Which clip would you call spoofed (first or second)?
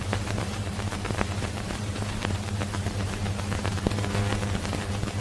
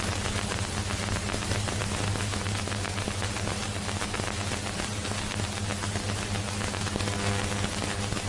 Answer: first